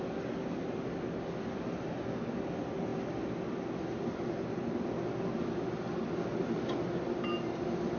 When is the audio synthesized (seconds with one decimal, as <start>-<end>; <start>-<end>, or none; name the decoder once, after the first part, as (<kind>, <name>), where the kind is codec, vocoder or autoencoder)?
none